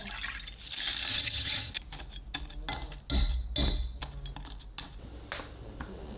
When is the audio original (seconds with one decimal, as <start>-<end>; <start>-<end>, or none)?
0.0-1.1; 1.7-6.2